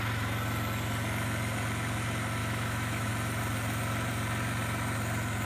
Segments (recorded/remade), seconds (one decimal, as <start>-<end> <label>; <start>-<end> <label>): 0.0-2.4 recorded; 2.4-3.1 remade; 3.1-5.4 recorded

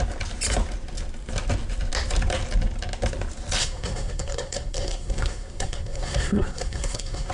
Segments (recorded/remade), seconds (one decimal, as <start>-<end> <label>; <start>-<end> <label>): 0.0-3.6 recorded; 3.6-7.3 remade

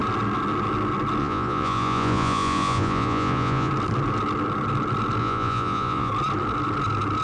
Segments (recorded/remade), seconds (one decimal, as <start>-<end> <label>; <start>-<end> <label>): 0.0-1.2 recorded; 1.2-3.7 remade; 3.7-5.2 recorded; 5.2-6.1 remade; 6.1-7.2 recorded